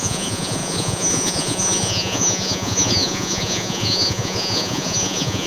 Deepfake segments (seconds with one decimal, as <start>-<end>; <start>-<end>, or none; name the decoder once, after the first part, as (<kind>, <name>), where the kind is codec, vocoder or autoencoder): 0.0-5.5 (vocoder, Vocos)